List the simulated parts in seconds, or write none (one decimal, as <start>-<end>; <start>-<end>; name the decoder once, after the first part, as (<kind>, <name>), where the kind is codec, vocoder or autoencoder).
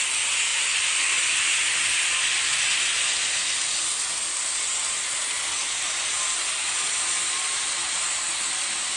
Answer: none